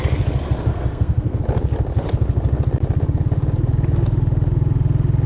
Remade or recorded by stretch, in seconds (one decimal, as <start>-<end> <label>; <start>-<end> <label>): 0.0-0.7 recorded; 0.7-1.4 remade; 1.4-5.3 recorded